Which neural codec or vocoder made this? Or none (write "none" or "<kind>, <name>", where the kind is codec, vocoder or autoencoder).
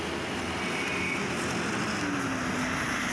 none